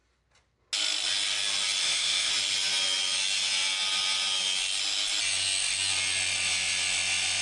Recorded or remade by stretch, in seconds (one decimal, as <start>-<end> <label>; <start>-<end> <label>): 0.0-1.8 recorded; 1.8-2.3 remade; 2.3-7.4 recorded